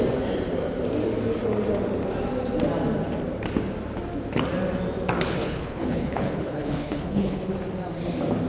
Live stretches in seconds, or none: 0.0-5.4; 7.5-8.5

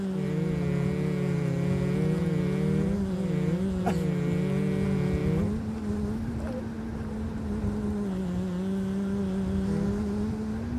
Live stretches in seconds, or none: 0.0-10.8

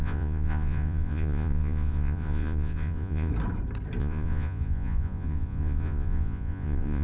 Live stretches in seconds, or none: 3.3-4.0

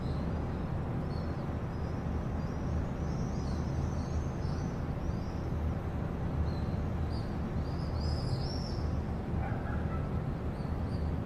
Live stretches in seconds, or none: 0.0-11.3

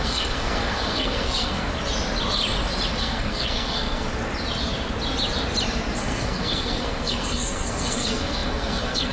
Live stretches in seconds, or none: 1.7-3.0; 4.1-6.0

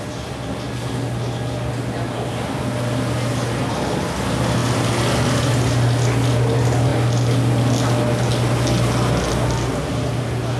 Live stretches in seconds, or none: 0.0-10.6

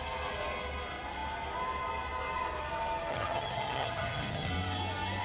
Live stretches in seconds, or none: 0.0-3.1; 4.5-5.2

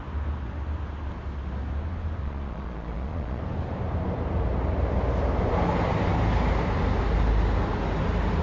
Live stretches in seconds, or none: 0.0-2.2; 3.4-8.4